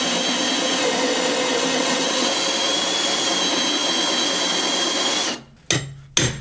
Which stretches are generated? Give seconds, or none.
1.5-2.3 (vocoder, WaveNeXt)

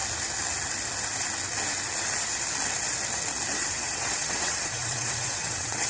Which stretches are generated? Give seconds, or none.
3.5-5.9 (vocoder, WaveNeXt)